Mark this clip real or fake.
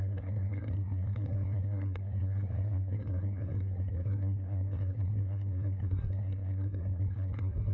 fake